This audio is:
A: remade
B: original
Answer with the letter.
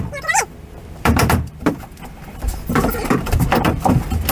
A